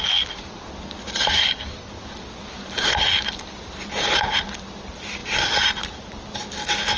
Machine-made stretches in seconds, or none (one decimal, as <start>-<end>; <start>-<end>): 1.4-1.9